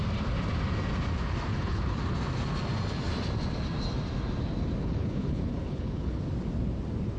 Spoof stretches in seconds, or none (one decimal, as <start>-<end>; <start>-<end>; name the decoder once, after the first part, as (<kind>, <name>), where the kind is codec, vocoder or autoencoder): 1.5-2.0 (codec, HILCodec); 4.8-6.2